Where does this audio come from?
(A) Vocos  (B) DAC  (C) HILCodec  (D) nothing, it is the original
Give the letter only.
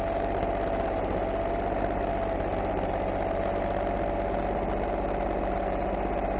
D